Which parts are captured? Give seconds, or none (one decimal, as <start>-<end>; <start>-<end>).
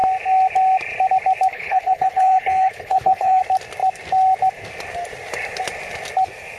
0.0-1.5; 3.4-6.6